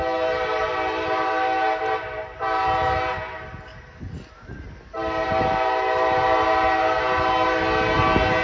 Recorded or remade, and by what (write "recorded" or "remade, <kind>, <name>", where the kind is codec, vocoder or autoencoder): recorded